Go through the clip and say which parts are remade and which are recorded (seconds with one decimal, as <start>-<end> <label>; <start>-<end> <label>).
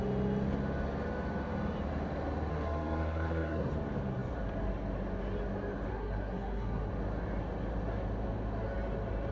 0.0-2.5 recorded; 2.5-3.7 remade; 3.7-5.9 recorded; 5.9-6.9 remade; 6.9-9.3 recorded